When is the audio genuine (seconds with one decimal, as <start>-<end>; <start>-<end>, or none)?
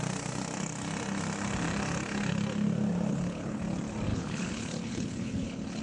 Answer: 0.0-3.1; 3.6-4.1